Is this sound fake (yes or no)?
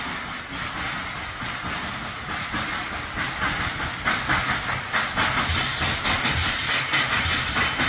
no